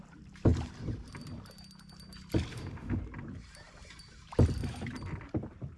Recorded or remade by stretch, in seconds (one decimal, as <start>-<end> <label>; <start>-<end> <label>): 0.0-2.5 recorded; 2.5-3.0 remade; 3.0-5.8 recorded